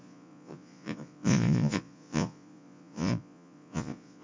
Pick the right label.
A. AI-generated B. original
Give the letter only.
A